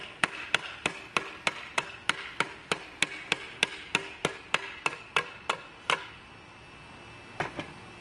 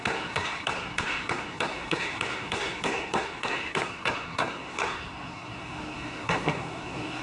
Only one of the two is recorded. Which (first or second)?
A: first